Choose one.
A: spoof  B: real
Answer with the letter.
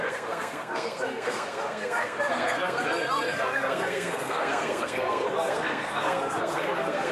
A